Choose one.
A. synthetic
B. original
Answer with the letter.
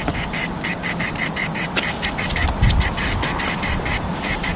B